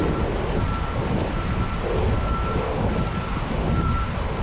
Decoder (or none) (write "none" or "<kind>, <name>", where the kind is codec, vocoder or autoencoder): none